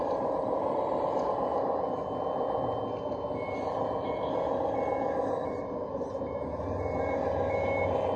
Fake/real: real